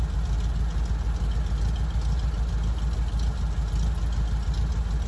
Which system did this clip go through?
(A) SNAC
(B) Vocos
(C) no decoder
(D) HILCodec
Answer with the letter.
C